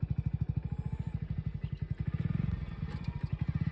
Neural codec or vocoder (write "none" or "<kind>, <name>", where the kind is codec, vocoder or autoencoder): none